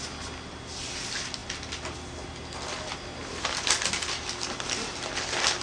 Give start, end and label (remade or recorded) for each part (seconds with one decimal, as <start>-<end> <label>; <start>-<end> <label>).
0.0-5.6 recorded